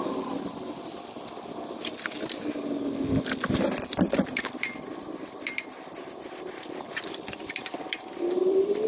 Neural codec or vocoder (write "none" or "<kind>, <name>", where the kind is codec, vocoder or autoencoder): vocoder, BigVGAN v2